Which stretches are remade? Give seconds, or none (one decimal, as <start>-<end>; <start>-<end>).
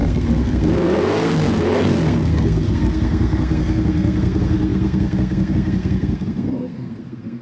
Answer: 0.0-7.4